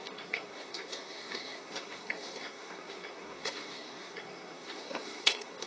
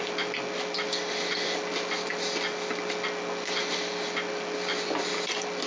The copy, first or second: first